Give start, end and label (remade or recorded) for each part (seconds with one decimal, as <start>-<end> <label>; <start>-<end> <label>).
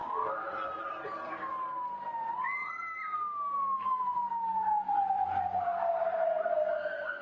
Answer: 0.0-7.2 recorded